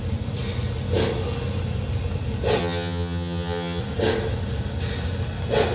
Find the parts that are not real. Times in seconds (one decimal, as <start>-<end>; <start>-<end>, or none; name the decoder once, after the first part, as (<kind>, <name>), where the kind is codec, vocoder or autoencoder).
2.6-3.8 (vocoder, HiFi-GAN)